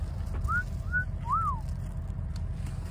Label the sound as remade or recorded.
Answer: recorded